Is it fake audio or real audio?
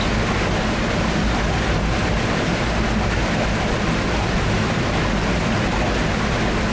real